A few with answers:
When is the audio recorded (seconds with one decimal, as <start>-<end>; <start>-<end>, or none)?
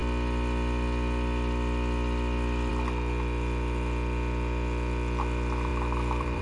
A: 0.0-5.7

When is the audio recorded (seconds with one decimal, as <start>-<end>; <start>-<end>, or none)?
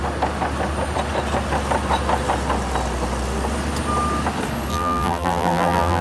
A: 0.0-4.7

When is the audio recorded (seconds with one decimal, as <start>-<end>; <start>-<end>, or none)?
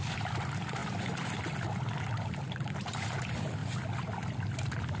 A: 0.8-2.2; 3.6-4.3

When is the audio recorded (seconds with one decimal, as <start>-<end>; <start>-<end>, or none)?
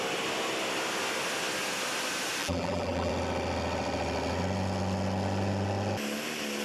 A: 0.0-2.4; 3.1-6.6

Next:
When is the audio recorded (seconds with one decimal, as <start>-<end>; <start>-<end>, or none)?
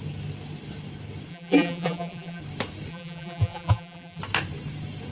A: 0.0-1.3; 2.4-2.9; 4.2-5.1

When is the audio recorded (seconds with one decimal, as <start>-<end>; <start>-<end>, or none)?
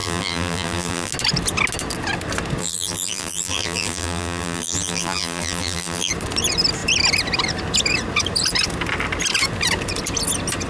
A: 1.1-2.6; 6.1-10.7